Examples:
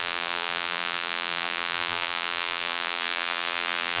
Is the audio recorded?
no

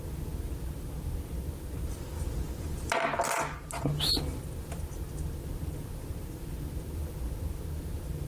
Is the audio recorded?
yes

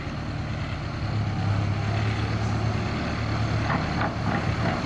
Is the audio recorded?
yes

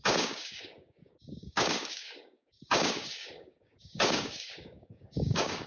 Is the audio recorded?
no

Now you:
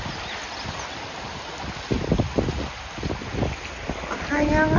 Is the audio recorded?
yes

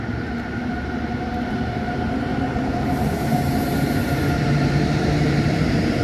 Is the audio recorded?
no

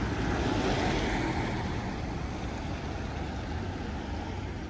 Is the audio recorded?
yes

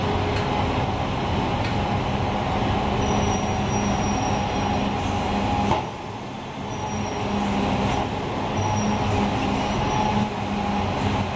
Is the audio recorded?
yes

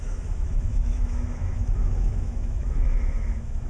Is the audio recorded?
no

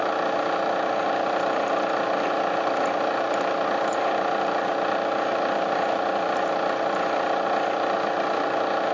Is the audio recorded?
yes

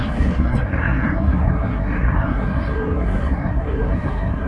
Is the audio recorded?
no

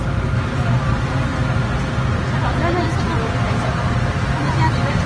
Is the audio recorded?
yes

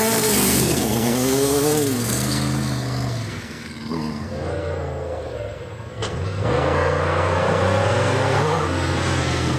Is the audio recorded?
no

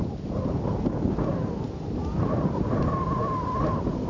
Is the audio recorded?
yes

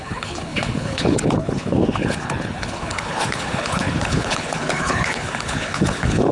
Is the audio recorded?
no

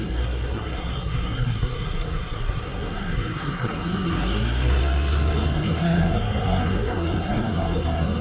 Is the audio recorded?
no